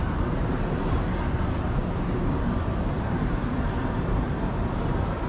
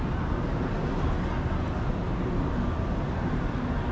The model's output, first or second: first